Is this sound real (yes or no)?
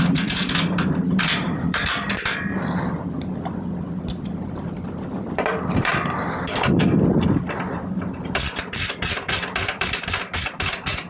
no